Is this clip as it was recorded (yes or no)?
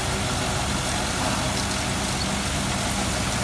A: yes